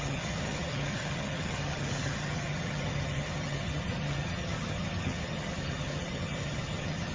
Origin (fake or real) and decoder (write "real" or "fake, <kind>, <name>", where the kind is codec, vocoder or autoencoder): fake, vocoder, HiFi-GAN